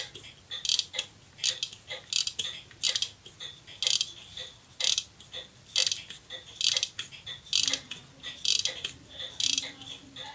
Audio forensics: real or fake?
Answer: real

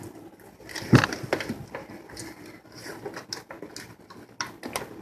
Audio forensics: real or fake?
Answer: real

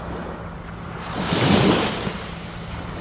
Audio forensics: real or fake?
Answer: real